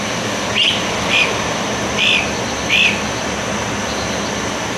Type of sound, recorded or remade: recorded